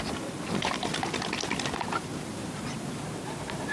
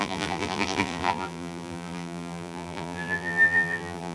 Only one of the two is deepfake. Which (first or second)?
second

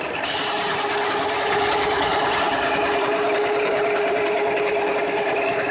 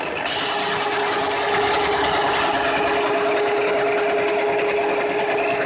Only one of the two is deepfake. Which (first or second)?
first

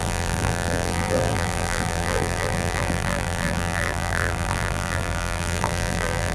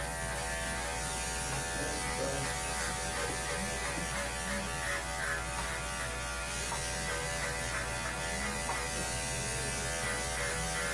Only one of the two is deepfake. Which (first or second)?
first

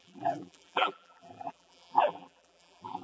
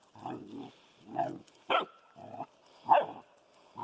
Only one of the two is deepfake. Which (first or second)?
first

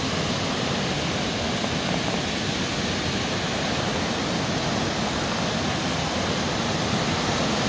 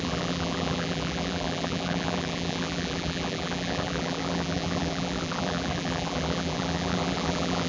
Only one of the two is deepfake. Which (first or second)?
second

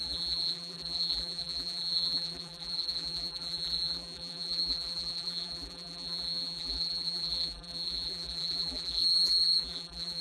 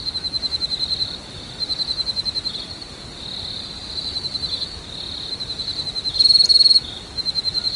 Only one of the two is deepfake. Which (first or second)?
first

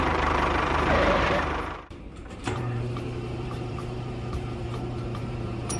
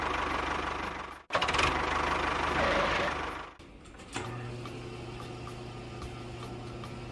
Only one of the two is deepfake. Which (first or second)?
first